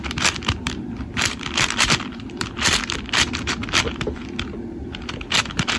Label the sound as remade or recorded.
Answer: remade